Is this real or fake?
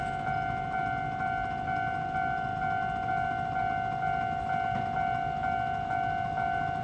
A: real